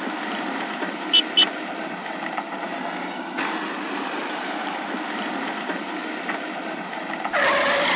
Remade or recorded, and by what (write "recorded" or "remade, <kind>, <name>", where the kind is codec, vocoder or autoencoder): recorded